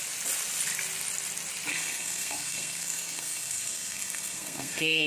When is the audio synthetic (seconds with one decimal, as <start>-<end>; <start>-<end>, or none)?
1.7-5.1